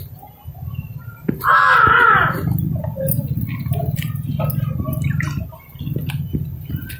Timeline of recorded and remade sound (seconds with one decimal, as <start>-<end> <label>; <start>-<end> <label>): 0.0-7.0 recorded